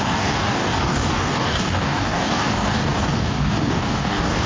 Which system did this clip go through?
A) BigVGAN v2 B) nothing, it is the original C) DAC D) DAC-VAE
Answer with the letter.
C